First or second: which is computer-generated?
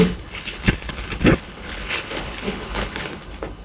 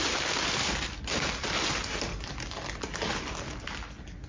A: first